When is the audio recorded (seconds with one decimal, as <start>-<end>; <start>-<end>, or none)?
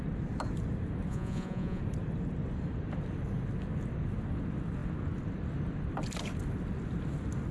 0.0-1.1; 1.8-7.5